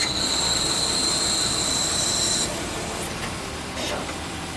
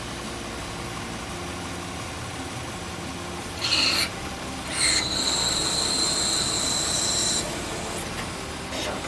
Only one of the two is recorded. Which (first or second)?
second